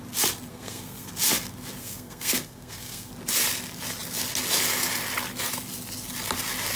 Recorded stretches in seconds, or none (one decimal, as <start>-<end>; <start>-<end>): 0.0-0.5; 1.1-1.8; 3.1-6.8